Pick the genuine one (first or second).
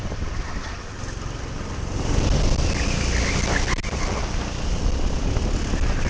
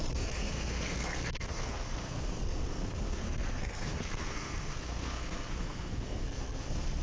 first